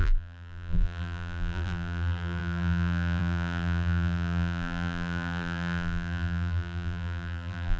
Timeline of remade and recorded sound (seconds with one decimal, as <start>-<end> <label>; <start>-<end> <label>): 0.0-7.8 remade